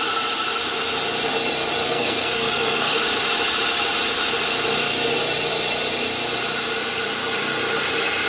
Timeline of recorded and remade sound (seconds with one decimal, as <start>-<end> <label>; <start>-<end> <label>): 0.0-1.8 recorded; 1.8-3.0 remade; 3.0-8.3 recorded